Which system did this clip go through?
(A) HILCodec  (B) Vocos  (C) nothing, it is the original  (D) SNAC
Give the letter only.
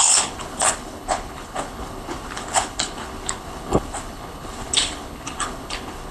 A